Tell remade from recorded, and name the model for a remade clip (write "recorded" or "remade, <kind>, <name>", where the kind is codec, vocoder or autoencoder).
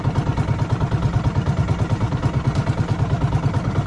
recorded